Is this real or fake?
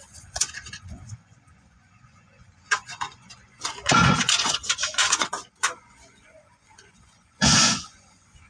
fake